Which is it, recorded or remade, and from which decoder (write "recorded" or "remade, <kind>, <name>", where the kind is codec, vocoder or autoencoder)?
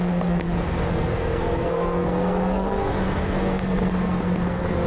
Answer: remade, codec, SNAC